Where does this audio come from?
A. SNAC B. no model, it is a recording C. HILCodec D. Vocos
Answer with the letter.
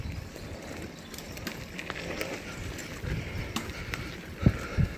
B